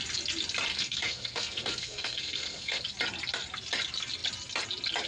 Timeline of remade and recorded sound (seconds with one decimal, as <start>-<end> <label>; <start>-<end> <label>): 0.0-0.7 recorded; 0.7-2.8 remade; 2.8-5.1 recorded